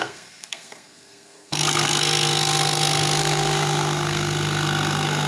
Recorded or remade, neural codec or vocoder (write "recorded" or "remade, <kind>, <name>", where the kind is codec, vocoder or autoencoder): remade, codec, SNAC